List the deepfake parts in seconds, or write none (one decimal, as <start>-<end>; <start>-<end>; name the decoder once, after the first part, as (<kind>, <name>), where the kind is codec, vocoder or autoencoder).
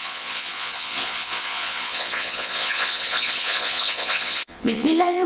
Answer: 0.0-5.3 (vocoder, Vocos)